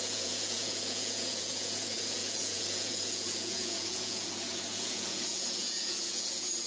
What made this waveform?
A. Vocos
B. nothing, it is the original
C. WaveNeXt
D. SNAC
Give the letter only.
A